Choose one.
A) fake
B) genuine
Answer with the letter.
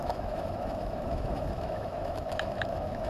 A